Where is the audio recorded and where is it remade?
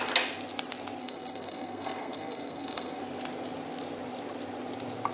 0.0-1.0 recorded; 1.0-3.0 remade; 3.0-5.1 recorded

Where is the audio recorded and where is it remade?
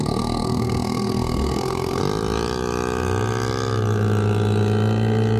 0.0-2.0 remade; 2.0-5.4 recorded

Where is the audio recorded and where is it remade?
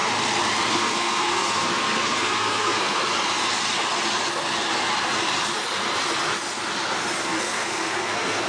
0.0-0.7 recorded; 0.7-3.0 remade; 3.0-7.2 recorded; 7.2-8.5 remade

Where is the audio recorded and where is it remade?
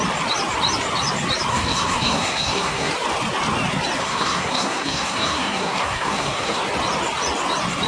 0.0-1.5 recorded; 1.5-2.9 remade; 2.9-4.0 recorded; 4.0-6.6 remade; 6.6-7.9 recorded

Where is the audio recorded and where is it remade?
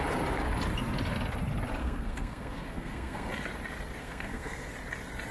0.0-1.8 recorded; 1.8-3.3 remade; 3.3-4.0 recorded; 4.0-4.7 remade; 4.7-5.3 recorded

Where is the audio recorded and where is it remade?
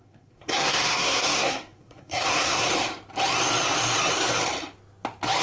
0.0-2.7 remade; 2.7-5.4 recorded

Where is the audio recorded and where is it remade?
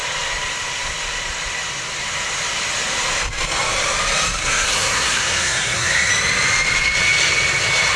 0.0-4.4 recorded; 4.4-6.1 remade; 6.1-8.0 recorded